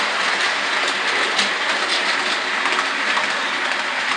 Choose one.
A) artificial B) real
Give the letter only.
B